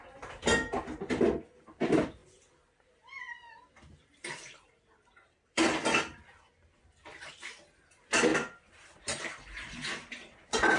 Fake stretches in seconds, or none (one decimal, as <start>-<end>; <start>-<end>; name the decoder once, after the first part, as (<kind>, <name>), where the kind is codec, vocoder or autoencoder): 2.2-7.3 (vocoder, BigVGAN v2); 8.3-10.8